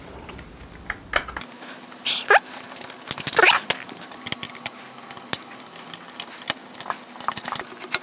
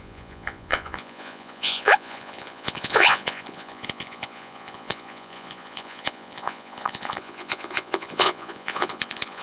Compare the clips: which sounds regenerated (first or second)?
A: second